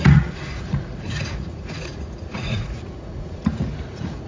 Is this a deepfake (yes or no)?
yes